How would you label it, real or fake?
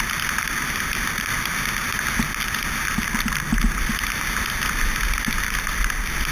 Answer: real